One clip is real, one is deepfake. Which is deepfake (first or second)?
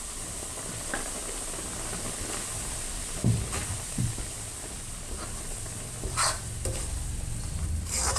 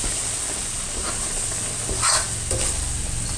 first